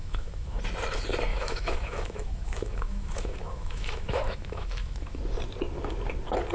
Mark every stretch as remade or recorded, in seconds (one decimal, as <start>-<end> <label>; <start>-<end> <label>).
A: 0.0-0.6 remade; 0.6-1.3 recorded; 1.3-5.2 remade; 5.2-6.5 recorded